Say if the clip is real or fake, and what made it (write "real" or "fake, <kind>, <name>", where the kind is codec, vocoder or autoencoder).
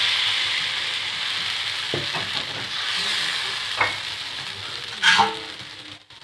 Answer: real